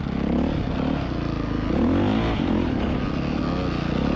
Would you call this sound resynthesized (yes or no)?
no